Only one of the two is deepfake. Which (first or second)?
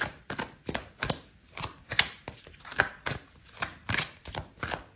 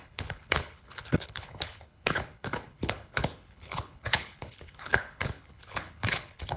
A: second